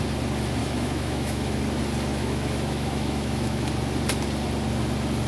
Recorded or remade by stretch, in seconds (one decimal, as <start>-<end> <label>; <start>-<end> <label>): 0.0-0.6 recorded; 0.6-1.6 remade; 1.6-2.1 recorded; 2.1-3.7 remade; 3.7-5.3 recorded